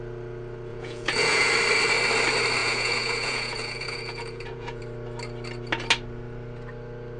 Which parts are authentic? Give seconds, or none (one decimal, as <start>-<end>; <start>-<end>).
0.0-0.7; 1.5-2.6; 4.8-7.2